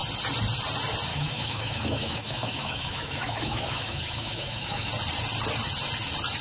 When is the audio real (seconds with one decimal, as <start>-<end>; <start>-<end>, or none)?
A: 0.0-1.1; 4.9-6.4